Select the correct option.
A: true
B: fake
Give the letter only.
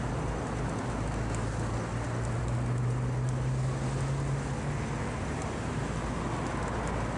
A